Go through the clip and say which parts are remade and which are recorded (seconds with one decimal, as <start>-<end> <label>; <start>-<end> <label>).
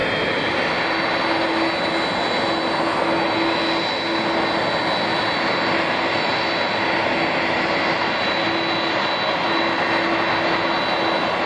0.0-11.5 recorded